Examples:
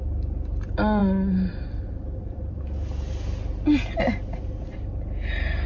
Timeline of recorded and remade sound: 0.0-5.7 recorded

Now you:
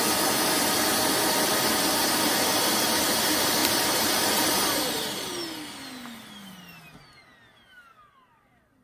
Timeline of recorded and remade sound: 0.0-3.6 recorded; 3.6-5.3 remade; 5.3-8.8 recorded

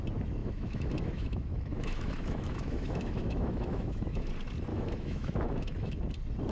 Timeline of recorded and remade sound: 0.0-0.4 recorded; 0.4-4.3 remade; 4.3-4.7 recorded; 4.7-6.0 remade; 6.0-6.5 recorded

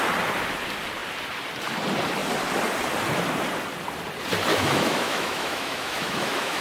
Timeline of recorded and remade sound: 0.0-4.5 recorded; 4.5-6.6 remade

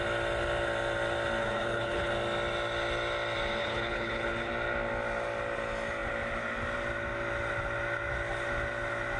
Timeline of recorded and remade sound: 0.0-1.4 recorded; 1.4-2.1 remade; 2.1-3.6 recorded; 3.6-4.5 remade; 4.5-9.2 recorded

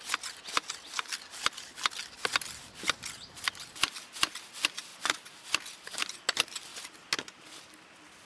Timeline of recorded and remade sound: 0.0-8.2 recorded